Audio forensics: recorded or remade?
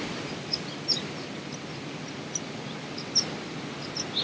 recorded